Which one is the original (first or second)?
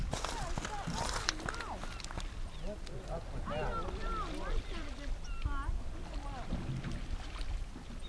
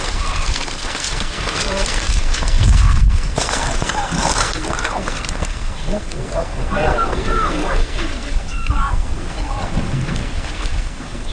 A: first